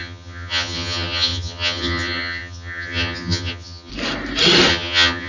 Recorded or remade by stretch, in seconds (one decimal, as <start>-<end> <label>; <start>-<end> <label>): 0.0-3.9 remade; 3.9-4.7 recorded; 4.7-5.3 remade